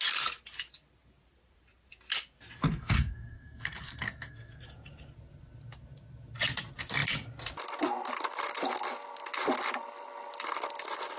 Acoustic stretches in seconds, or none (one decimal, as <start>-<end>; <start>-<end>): 0.0-2.6; 4.6-11.2